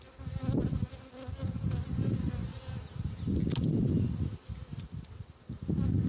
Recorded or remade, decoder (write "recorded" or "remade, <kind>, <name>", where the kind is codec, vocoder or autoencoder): recorded